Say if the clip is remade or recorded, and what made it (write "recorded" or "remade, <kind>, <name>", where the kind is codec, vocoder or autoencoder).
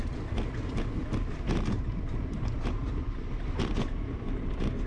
recorded